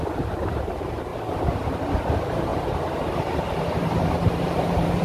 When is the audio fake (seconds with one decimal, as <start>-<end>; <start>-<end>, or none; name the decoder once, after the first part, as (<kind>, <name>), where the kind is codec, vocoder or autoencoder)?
0.0-1.1 (vocoder, BigVGAN v2); 2.1-2.5; 3.4-5.0